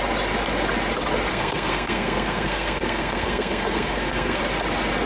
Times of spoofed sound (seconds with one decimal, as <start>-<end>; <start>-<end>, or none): 1.3-4.4